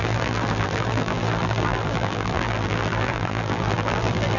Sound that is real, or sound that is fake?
fake